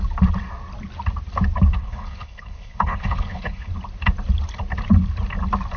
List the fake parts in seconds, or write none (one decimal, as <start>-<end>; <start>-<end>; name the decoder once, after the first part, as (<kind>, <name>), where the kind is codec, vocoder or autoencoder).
1.8-3.7 (codec, HILCodec)